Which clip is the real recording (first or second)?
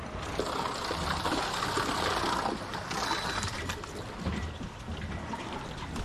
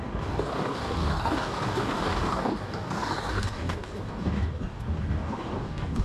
first